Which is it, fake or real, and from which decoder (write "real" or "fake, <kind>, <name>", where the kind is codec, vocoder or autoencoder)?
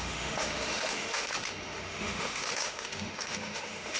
fake, autoencoder, DAC-VAE